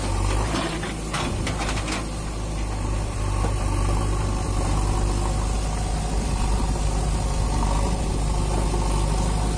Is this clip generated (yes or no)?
no